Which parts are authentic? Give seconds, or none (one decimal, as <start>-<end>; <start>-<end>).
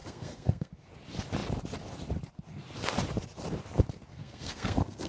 0.7-4.1